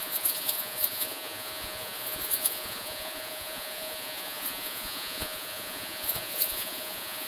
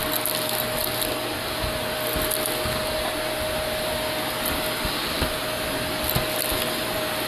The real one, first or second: second